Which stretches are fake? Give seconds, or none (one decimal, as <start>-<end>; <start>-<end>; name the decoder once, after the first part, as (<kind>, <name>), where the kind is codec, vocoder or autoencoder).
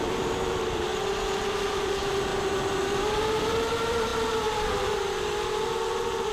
0.0-0.9 (vocoder, BigVGAN v2); 1.7-2.3; 2.8-6.3